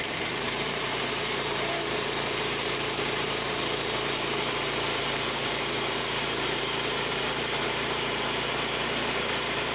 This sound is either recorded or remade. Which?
remade